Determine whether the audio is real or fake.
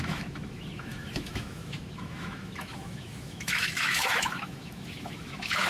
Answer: fake